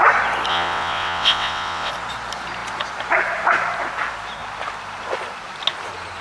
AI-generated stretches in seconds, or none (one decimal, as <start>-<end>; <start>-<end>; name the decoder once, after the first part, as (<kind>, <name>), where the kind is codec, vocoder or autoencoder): 0.5-1.9 (vocoder, WaveNeXt)